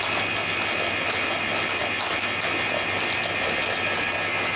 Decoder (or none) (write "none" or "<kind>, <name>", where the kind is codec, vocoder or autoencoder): none